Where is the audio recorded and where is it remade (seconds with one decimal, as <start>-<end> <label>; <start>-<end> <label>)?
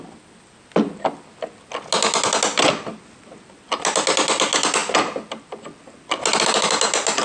0.0-7.2 recorded